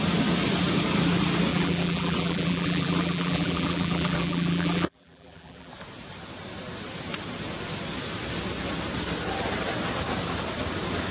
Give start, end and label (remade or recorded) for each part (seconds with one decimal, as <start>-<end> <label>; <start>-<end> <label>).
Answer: 0.0-1.5 recorded; 1.5-5.7 remade; 5.7-11.1 recorded